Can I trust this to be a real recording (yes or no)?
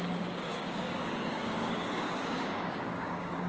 no